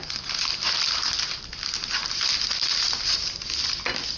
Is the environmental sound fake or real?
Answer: real